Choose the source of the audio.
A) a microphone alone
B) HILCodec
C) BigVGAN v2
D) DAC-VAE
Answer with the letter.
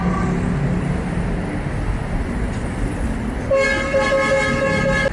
A